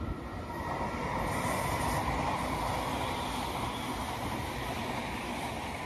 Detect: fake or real real